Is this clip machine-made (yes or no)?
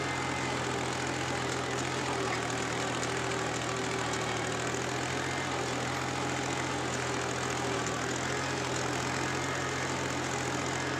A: no